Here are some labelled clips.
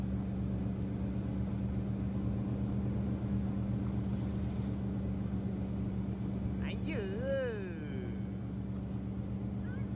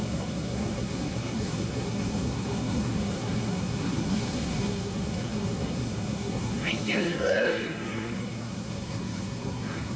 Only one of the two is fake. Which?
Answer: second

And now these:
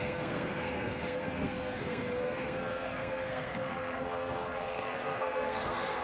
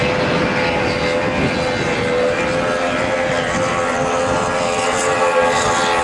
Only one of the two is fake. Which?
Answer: first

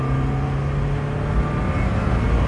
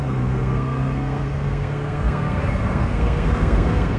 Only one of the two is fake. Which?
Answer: second